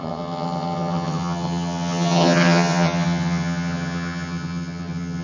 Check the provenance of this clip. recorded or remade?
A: remade